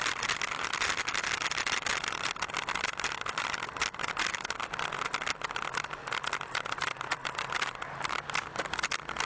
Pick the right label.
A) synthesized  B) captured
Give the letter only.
B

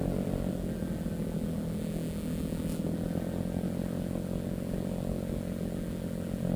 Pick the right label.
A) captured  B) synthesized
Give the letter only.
A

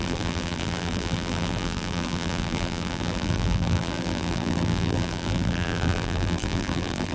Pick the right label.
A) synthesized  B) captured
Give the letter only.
A